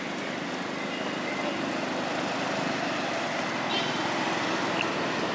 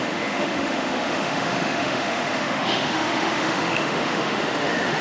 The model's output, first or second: second